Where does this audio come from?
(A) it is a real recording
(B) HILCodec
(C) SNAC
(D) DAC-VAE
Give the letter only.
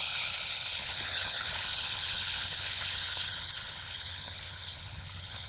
B